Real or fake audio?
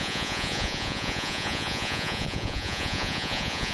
fake